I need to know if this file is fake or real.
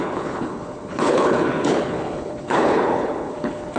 fake